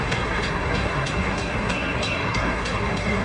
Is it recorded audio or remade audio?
remade